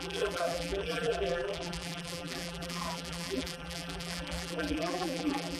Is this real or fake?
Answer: fake